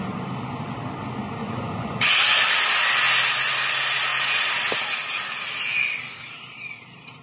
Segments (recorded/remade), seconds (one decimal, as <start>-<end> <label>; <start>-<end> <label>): 0.0-1.4 recorded; 1.4-2.1 remade; 2.1-7.2 recorded